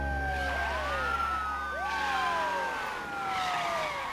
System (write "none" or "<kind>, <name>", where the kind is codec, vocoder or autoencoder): none